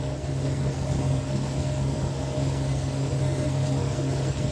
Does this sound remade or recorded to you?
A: remade